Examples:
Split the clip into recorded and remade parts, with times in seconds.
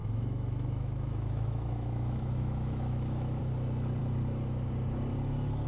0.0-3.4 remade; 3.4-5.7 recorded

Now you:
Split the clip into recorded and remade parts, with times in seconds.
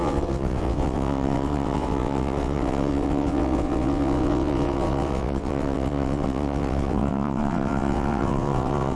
0.0-9.0 remade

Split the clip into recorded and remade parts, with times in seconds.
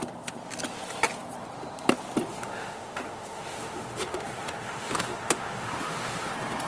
0.0-2.3 recorded; 2.3-6.3 remade; 6.3-6.7 recorded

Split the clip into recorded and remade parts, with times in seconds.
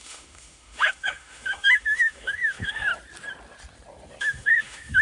0.0-2.9 remade; 2.9-4.2 recorded; 4.2-5.0 remade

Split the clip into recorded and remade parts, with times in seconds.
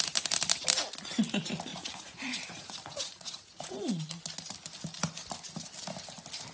0.0-1.7 recorded; 1.7-4.2 remade; 4.2-6.5 recorded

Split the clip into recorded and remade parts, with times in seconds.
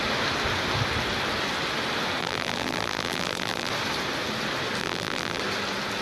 0.0-2.2 recorded; 2.2-3.7 remade; 3.7-4.8 recorded; 4.8-5.4 remade; 5.4-6.0 recorded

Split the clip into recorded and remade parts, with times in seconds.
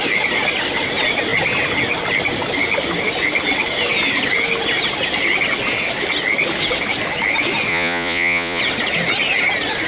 0.0-7.7 recorded; 7.7-8.6 remade; 8.6-9.9 recorded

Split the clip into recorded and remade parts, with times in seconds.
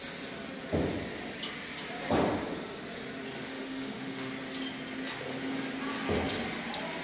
0.0-3.5 recorded; 3.5-4.3 remade; 4.3-7.0 recorded